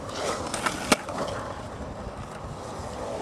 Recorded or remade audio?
recorded